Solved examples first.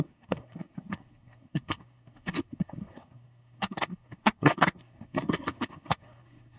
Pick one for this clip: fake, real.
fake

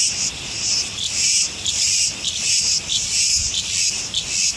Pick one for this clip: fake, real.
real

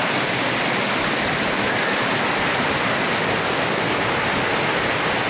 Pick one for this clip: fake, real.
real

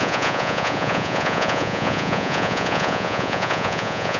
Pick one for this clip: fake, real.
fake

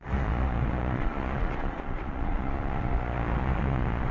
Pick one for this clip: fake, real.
fake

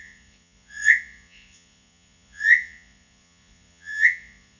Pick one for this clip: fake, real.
fake